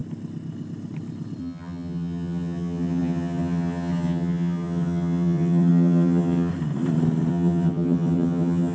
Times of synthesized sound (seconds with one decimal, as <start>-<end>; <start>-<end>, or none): 1.4-6.5; 7.3-8.7